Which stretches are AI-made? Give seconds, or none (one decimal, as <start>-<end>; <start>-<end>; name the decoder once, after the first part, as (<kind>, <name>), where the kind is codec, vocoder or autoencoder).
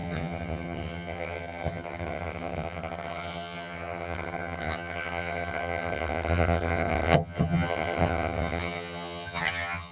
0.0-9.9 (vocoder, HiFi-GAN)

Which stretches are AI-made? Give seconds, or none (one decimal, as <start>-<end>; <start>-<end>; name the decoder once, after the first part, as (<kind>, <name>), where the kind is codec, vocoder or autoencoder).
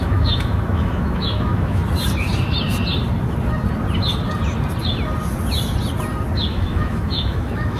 0.0-1.8 (autoencoder, DAC-VAE); 6.5-7.8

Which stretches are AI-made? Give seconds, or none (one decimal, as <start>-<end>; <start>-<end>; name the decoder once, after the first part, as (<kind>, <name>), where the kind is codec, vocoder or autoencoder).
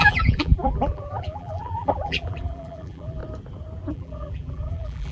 0.0-3.2 (vocoder, BigVGAN v2); 3.9-5.1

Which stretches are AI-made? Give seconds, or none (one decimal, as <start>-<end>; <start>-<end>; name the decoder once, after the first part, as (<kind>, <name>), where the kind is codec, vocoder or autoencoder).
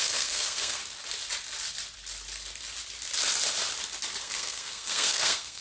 0.0-0.8 (codec, SNAC); 4.2-5.6